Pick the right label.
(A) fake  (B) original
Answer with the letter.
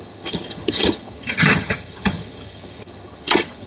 A